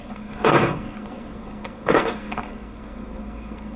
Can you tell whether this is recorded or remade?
remade